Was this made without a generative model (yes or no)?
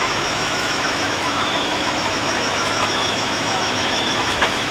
no